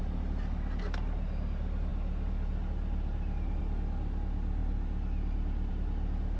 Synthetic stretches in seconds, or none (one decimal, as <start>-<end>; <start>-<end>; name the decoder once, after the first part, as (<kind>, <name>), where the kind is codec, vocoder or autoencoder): none